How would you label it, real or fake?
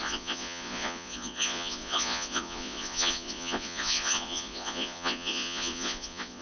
fake